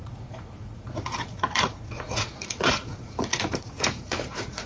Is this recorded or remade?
remade